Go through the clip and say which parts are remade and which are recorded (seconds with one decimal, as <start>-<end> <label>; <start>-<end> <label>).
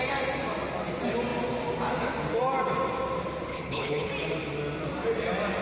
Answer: 0.0-3.5 recorded; 3.5-4.1 remade; 4.1-5.6 recorded